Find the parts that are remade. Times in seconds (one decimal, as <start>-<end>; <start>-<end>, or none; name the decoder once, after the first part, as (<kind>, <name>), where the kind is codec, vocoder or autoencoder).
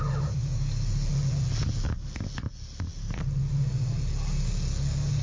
2.9-3.4 (vocoder, BigVGAN v2)